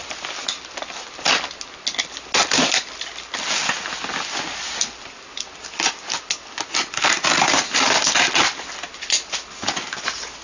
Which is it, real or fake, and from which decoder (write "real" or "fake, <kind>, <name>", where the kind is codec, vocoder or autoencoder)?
real